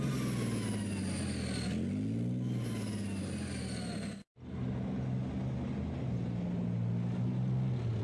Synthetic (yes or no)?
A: no